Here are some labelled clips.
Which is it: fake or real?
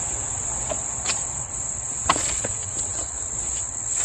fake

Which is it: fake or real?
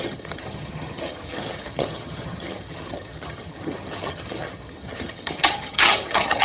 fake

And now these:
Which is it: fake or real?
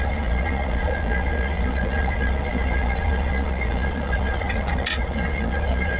fake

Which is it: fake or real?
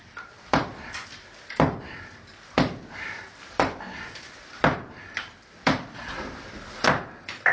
fake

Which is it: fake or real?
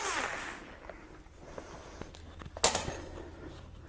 real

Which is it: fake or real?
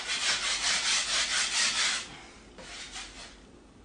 real